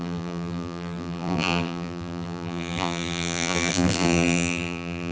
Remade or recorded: remade